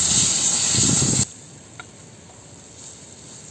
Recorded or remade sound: recorded